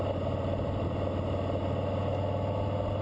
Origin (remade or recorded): recorded